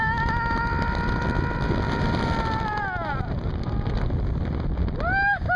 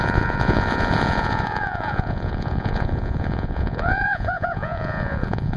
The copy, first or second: second